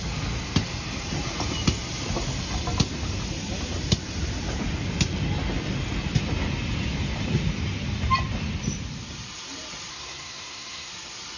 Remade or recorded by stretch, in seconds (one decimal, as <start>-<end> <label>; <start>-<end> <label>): 0.0-9.9 recorded; 9.9-10.9 remade; 10.9-11.4 recorded